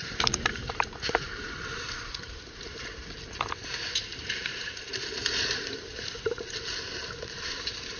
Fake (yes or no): yes